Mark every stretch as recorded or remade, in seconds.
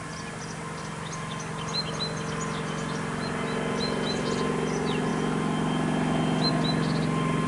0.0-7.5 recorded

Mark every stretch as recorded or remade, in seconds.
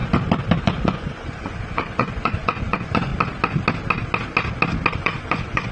0.0-0.6 recorded; 0.6-3.1 remade; 3.1-5.0 recorded; 5.0-5.7 remade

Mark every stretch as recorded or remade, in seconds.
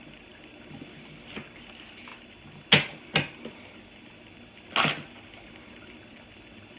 0.0-6.8 recorded